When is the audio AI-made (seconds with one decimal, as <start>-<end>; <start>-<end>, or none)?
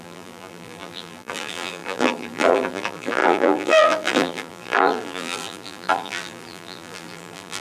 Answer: 0.0-7.6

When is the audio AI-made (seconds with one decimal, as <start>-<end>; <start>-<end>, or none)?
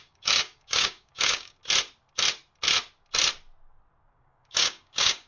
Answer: 0.0-1.6; 4.1-5.3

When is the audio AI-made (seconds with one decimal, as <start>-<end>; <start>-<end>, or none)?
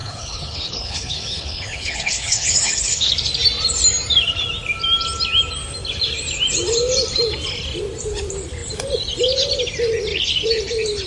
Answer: 0.0-3.1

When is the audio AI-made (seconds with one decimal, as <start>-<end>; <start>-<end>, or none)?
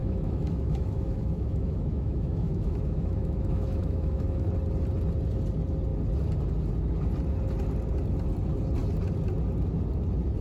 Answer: 0.0-4.5